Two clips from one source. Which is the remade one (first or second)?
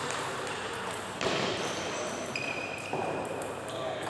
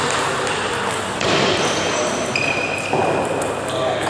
first